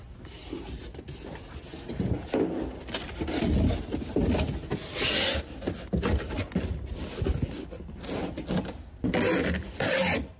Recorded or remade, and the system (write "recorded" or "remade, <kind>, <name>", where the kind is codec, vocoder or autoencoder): recorded